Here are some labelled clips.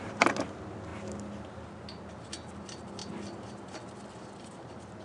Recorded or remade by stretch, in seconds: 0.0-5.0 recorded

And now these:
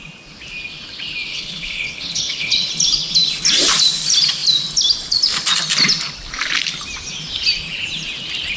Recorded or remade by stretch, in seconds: 0.0-1.3 recorded; 1.3-2.7 remade; 2.7-8.6 recorded